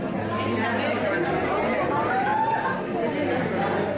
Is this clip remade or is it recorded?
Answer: recorded